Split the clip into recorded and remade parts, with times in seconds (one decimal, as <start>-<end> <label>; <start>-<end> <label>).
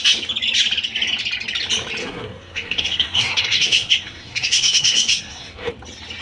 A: 0.0-2.0 recorded; 2.0-5.7 remade; 5.7-6.2 recorded